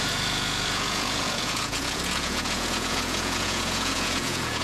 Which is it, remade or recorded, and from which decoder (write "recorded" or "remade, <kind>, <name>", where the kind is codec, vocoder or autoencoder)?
remade, vocoder, Vocos